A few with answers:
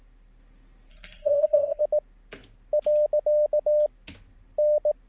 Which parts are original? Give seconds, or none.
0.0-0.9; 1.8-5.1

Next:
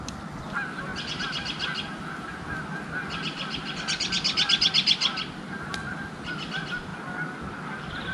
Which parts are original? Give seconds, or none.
0.0-8.1

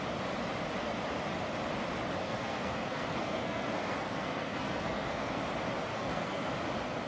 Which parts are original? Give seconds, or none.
0.0-2.2; 5.4-5.9; 6.5-7.1

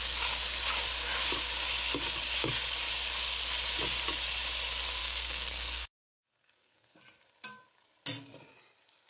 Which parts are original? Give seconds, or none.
0.0-5.0; 7.0-9.1

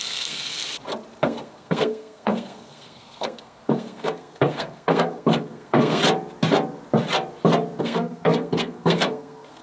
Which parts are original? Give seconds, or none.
0.6-1.2; 6.0-7.8